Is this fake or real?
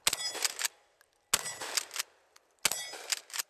real